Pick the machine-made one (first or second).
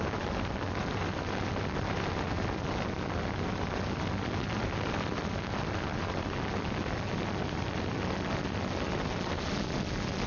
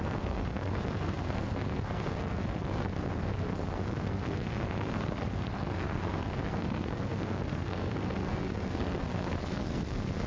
second